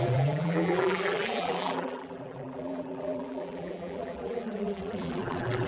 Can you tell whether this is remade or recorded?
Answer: remade